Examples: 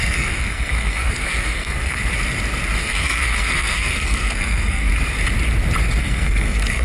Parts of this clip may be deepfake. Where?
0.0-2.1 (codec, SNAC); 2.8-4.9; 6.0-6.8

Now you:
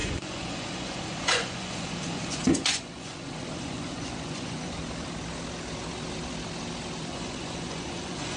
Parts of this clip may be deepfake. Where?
0.0-4.7 (vocoder, Vocos); 7.1-8.4

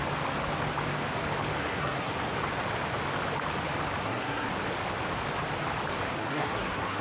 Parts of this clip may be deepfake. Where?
1.6-2.1 (codec, SNAC); 4.0-4.5; 6.2-7.0

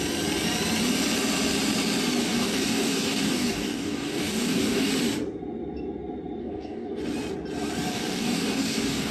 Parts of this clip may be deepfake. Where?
2.2-4.9 (codec, DAC); 6.4-7.0; 7.9-9.1

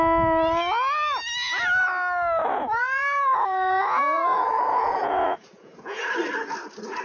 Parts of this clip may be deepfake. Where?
2.5-6.0 (vocoder, Vocos)

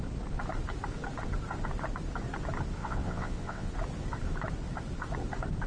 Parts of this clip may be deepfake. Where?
2.8-3.7 (vocoder, WaveNeXt)

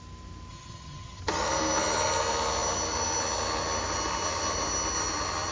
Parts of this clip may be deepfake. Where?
0.5-1.2 (vocoder, HiFi-GAN)